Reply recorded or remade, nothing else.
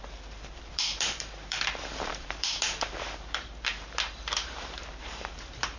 remade